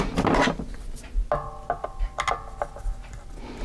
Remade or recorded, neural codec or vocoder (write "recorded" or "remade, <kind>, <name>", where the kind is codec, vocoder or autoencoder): recorded